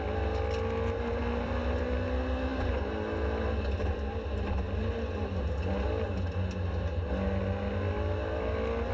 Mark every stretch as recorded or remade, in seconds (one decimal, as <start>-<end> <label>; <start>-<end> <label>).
0.0-1.2 recorded; 1.2-1.8 remade; 1.8-8.9 recorded